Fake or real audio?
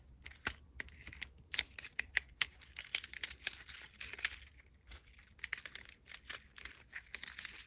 real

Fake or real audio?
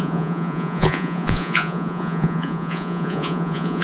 fake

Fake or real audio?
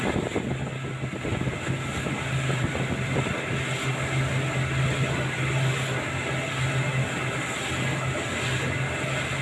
real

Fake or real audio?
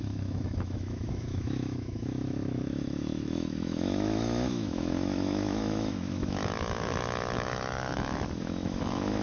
fake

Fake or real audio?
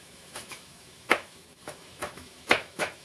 fake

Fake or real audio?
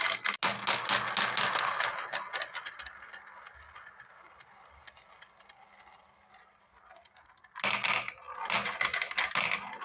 real